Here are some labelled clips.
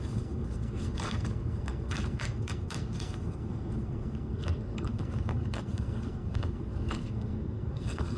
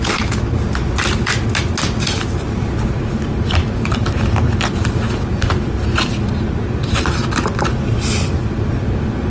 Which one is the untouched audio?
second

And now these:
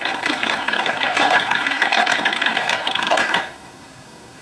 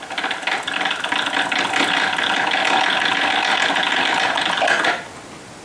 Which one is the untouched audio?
second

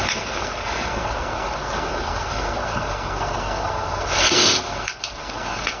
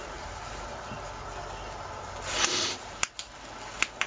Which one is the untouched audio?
second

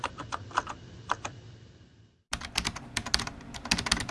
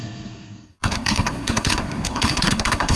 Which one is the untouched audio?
first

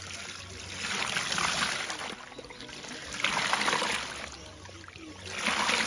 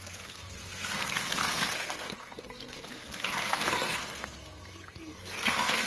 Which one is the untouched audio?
first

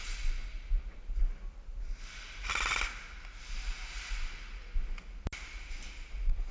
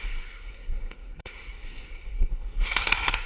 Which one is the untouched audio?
first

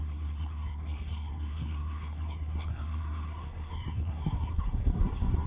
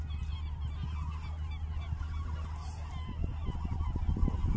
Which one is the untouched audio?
second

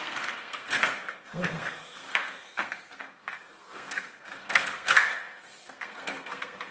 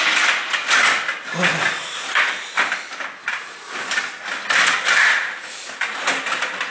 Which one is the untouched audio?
second